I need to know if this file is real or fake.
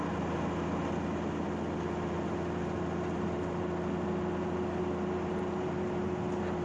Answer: real